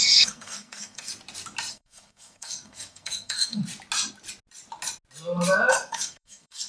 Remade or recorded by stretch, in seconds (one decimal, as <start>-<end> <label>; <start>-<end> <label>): 0.0-1.1 remade; 1.1-1.7 recorded; 1.7-3.6 remade; 3.6-5.7 recorded; 5.7-6.7 remade